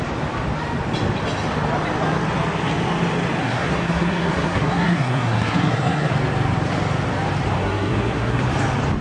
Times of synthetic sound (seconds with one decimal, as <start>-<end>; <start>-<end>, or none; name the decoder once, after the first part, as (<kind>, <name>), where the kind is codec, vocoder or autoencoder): 3.4-6.1 (codec, SNAC); 7.6-8.4